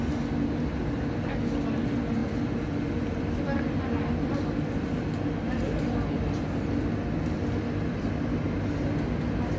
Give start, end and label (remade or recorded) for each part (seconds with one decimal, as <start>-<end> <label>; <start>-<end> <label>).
0.0-9.6 recorded

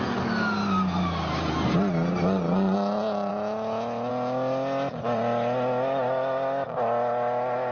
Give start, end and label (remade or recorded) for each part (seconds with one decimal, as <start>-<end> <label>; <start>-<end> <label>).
0.0-3.3 recorded; 3.3-4.1 remade; 4.1-7.7 recorded

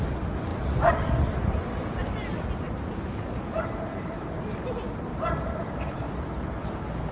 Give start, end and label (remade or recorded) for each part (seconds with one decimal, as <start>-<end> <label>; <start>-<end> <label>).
0.0-5.1 recorded; 5.1-6.1 remade; 6.1-7.1 recorded

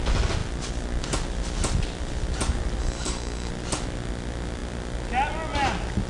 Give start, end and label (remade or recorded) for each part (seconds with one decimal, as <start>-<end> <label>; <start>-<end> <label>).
0.0-2.8 recorded; 2.8-3.5 remade; 3.5-6.1 recorded

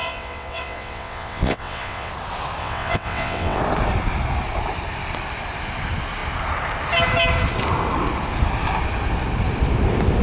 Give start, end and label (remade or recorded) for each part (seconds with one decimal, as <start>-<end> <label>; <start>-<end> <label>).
0.0-2.1 remade; 2.1-2.6 recorded; 2.6-3.6 remade; 3.6-10.2 recorded

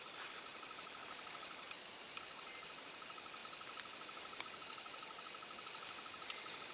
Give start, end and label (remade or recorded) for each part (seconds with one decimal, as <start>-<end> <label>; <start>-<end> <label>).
0.0-6.7 recorded

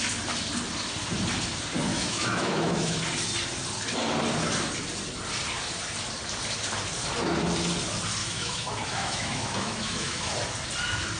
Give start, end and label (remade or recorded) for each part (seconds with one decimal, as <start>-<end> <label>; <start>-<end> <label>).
0.0-1.9 recorded; 1.9-3.0 remade; 3.0-8.2 recorded; 8.2-10.3 remade; 10.3-11.2 recorded

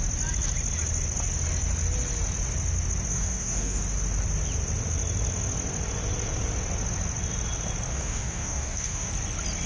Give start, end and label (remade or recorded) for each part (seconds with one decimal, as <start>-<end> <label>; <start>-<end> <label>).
0.0-3.1 recorded; 3.1-3.8 remade; 3.8-7.9 recorded; 7.9-9.1 remade; 9.1-9.7 recorded